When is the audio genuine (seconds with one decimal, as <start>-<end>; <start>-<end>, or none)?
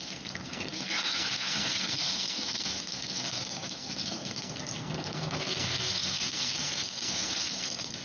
none